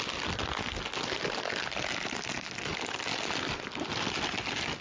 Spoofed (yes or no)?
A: no